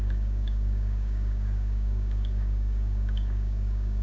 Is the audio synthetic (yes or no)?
yes